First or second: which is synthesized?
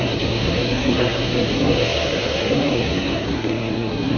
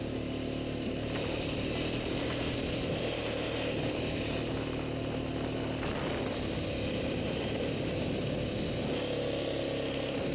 first